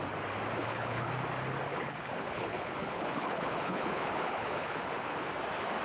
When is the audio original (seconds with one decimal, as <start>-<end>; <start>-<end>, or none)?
0.0-0.6; 1.1-1.8; 5.3-5.8